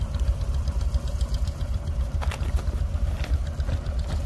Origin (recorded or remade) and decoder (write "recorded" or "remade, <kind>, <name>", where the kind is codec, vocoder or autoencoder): recorded